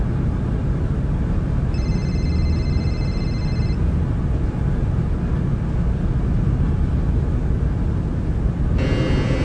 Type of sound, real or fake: real